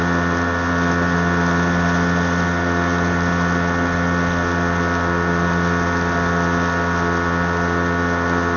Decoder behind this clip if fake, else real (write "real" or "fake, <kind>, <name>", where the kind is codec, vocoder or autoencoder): real